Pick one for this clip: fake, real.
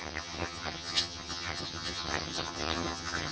fake